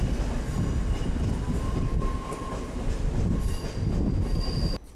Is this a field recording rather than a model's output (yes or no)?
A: yes